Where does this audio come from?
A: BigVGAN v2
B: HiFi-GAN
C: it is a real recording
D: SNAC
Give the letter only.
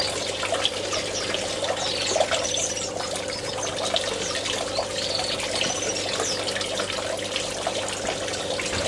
C